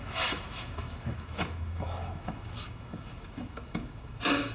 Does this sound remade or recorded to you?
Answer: remade